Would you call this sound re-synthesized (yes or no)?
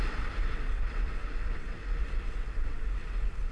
yes